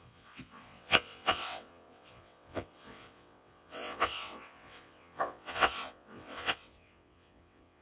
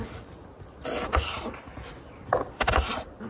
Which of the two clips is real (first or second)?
second